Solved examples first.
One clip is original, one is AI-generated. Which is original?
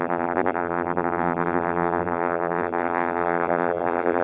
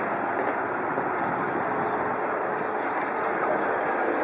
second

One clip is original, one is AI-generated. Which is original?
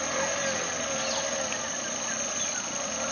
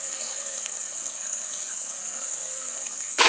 first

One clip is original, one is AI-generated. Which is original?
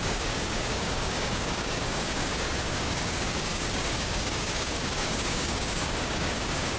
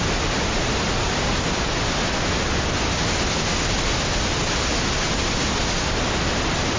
second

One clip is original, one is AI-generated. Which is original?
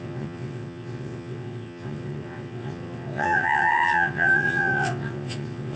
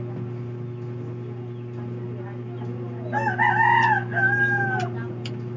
second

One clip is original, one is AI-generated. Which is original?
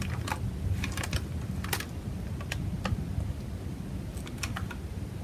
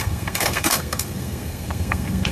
first